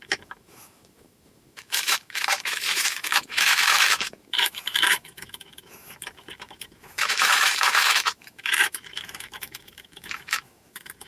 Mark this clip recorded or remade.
remade